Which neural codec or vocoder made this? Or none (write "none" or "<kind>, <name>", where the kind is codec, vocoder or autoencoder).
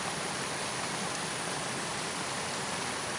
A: none